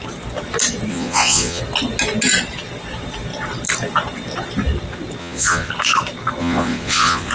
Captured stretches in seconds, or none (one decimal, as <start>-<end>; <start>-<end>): 0.0-0.9; 1.6-5.2; 5.7-6.4